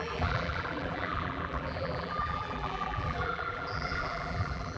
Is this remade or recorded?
remade